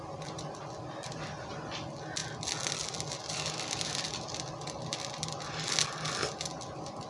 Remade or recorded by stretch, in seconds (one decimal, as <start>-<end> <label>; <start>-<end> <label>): 0.0-7.1 recorded